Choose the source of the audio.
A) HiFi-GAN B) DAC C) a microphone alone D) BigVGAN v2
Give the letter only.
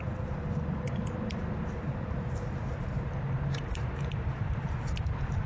D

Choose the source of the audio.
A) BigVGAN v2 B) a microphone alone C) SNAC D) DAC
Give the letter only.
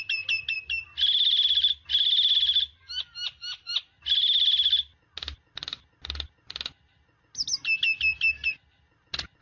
B